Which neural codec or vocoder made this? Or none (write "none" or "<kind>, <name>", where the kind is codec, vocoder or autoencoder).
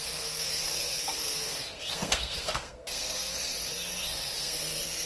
codec, SNAC